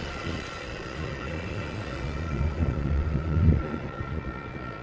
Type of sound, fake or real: fake